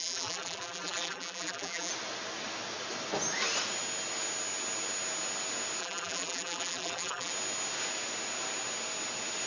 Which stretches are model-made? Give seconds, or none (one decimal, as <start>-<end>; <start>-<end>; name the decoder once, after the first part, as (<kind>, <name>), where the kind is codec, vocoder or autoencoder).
0.0-1.9 (vocoder, BigVGAN v2); 5.8-7.3